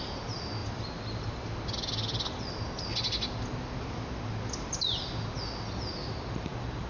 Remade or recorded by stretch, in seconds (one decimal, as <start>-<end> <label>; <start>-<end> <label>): 0.0-0.6 recorded; 0.6-1.4 remade; 1.4-6.0 recorded; 6.0-6.9 remade